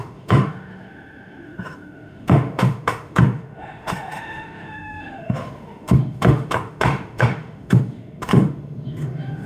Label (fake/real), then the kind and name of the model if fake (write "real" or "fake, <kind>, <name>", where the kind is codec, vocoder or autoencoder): fake, autoencoder, DAC-VAE